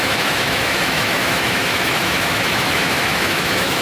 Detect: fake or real fake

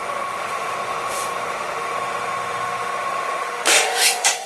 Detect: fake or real fake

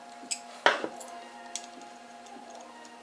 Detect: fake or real real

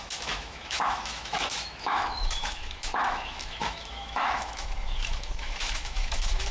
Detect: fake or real fake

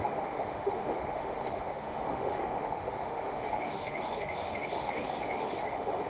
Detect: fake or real fake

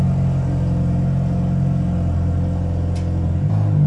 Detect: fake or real real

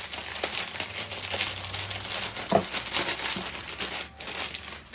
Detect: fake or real real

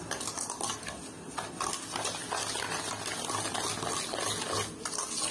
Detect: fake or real real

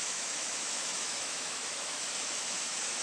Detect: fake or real fake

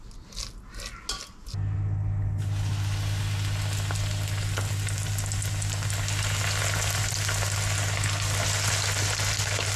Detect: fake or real real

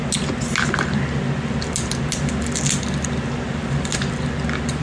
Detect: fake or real real